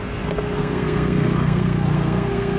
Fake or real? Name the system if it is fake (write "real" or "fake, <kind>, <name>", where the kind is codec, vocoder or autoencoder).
fake, codec, SNAC